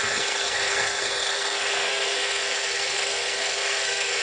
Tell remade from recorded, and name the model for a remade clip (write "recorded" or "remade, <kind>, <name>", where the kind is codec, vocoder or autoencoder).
remade, codec, SNAC